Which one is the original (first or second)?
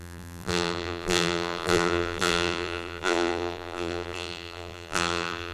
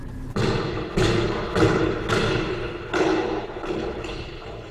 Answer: second